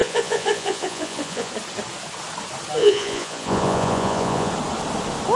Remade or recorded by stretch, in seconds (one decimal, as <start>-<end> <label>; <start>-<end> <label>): 0.0-1.5 remade; 1.5-2.8 recorded; 2.8-4.5 remade; 4.5-5.4 recorded